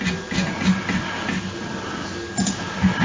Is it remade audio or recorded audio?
recorded